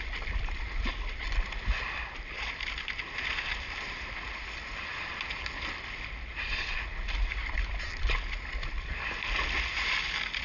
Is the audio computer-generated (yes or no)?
no